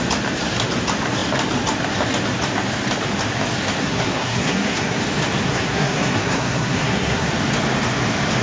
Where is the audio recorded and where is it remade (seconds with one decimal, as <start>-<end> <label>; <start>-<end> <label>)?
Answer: 0.0-3.8 recorded; 3.8-5.0 remade; 5.0-5.5 recorded; 5.5-7.3 remade; 7.3-8.4 recorded